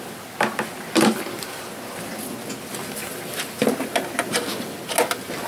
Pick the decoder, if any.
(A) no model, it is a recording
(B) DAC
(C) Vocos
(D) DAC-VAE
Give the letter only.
A